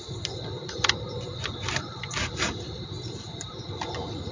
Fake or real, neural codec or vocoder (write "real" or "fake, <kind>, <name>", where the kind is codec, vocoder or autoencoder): real